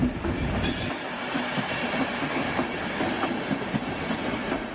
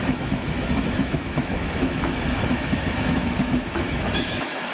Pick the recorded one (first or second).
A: first